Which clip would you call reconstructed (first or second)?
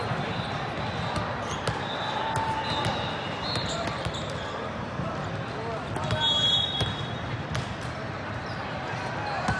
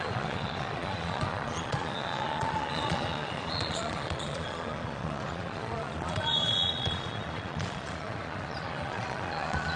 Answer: second